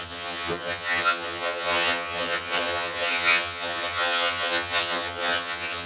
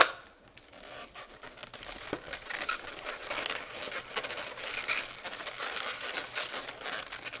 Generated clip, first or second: first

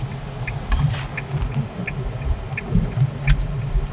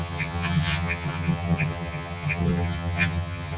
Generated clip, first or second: second